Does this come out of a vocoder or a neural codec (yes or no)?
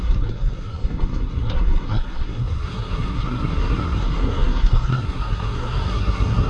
yes